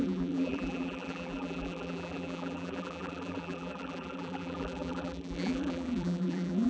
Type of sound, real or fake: fake